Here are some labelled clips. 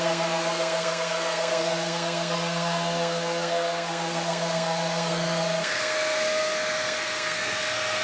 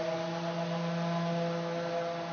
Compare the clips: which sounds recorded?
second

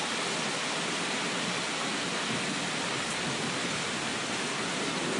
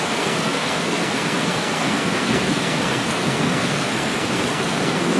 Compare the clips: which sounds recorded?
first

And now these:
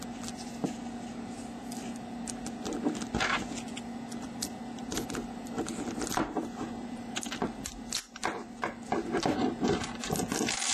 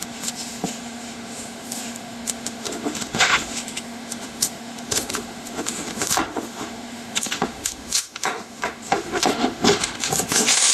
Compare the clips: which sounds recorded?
first